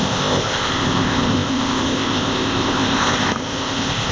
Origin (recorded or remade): remade